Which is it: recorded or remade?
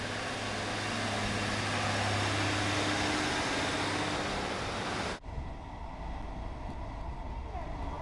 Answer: recorded